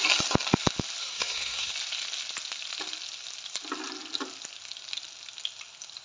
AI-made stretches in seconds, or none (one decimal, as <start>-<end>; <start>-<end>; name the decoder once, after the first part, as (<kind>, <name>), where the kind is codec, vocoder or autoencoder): 1.0-1.7 (codec, SNAC)